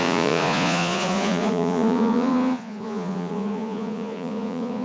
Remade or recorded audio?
remade